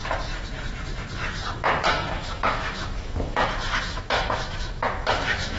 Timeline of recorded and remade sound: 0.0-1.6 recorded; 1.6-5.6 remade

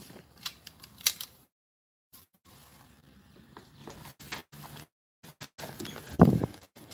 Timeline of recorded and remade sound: 0.0-3.8 remade; 3.8-6.2 recorded; 6.2-6.9 remade

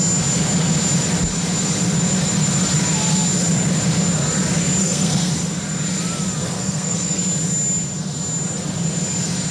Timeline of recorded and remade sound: 0.0-4.8 recorded; 4.8-5.3 remade; 5.3-6.4 recorded; 6.4-7.2 remade; 7.2-9.5 recorded

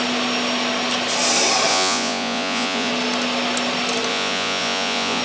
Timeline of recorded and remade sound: 0.0-1.7 recorded; 1.7-2.9 remade; 2.9-4.1 recorded; 4.1-5.2 remade

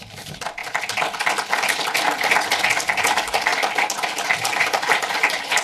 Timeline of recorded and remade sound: 0.0-0.6 remade; 0.6-2.8 recorded; 2.8-3.5 remade; 3.5-4.2 recorded; 4.2-5.6 remade

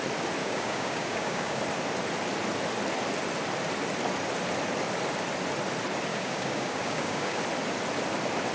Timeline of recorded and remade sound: 0.0-0.4 recorded; 0.4-1.6 remade; 1.6-6.1 recorded; 6.1-7.4 remade; 7.4-8.5 recorded

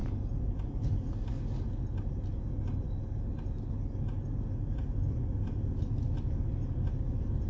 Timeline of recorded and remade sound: 0.0-0.8 remade; 0.8-7.5 recorded

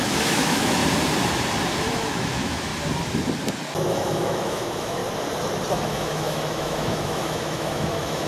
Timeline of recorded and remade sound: 0.0-0.8 remade; 0.8-1.9 recorded; 1.9-2.7 remade; 2.7-3.9 recorded; 3.9-5.0 remade; 5.0-5.7 recorded; 5.7-8.3 remade